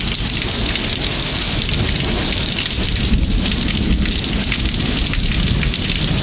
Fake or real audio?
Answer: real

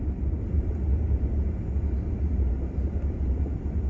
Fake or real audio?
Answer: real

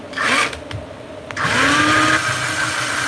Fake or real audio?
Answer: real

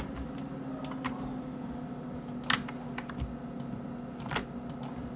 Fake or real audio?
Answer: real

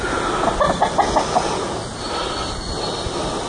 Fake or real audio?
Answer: real